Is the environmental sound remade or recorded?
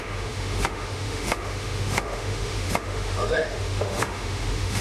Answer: remade